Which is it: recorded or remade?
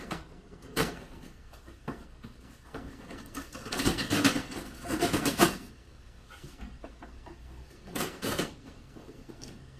remade